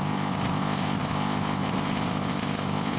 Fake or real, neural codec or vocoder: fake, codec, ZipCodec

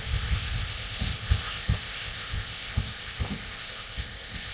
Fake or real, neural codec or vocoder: fake, codec, ZipCodec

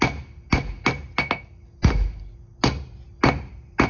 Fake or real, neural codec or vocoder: real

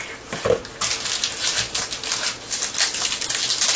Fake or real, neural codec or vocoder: real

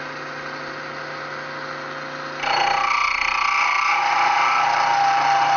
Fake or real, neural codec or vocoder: real